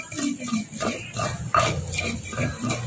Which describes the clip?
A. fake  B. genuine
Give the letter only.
B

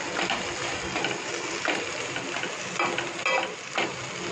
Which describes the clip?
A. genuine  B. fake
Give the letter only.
A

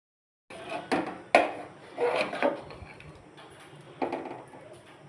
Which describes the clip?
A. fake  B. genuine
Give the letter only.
B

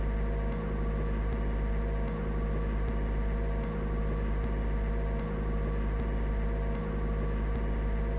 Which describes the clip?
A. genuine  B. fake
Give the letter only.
A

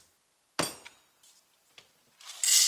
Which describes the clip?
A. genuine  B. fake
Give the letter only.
A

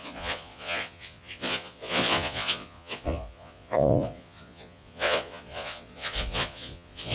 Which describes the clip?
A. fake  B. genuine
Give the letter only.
A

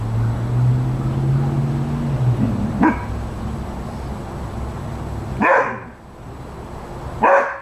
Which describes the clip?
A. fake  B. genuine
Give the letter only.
B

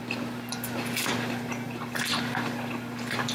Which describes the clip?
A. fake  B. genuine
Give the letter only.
B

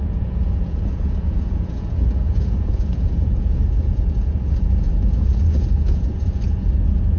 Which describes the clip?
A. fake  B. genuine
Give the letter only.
A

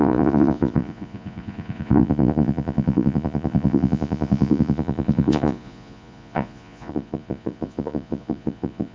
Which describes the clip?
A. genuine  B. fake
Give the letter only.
B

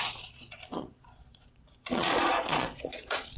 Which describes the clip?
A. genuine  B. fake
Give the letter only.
B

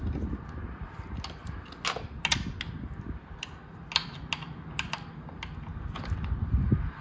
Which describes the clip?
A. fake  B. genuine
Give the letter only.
B